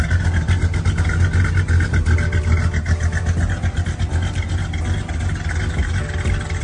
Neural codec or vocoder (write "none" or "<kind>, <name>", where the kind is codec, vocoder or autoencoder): none